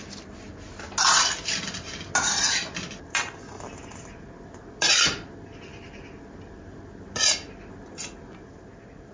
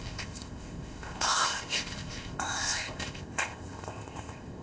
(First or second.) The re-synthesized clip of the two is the second